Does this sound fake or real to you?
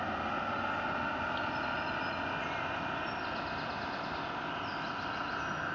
real